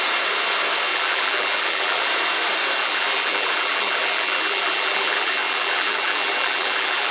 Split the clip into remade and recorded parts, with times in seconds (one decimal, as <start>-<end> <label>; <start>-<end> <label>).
0.0-0.9 recorded; 0.9-2.0 remade; 2.0-2.8 recorded; 2.8-7.1 remade